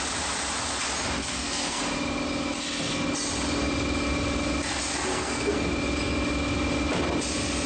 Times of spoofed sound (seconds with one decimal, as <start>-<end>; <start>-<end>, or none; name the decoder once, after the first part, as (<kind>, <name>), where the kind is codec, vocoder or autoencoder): 1.2-1.8 (codec, SNAC); 5.1-5.7